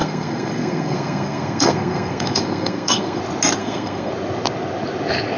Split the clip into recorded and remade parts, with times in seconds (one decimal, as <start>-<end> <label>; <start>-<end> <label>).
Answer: 0.0-3.2 remade; 3.2-3.6 recorded; 3.6-4.1 remade; 4.1-5.4 recorded